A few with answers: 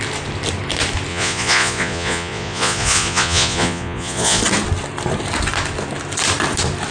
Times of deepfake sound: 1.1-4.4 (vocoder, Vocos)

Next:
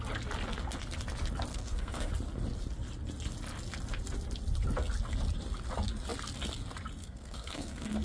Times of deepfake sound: 1.5-2.1 (codec, SNAC); 7.0-8.0

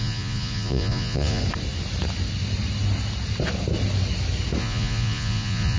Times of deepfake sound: 0.0-1.4 (vocoder, Vocos); 4.6-5.8

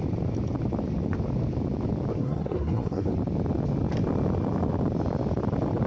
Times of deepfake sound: 2.1-3.1 (codec, SNAC)

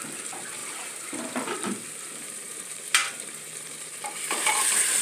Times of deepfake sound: 0.0-5.0 (vocoder, BigVGAN v2)

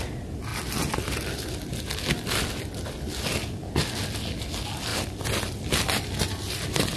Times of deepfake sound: none

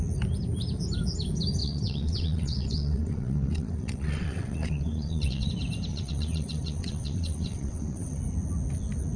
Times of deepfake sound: 1.6-5.5 (vocoder, WaveNeXt); 5.9-8.2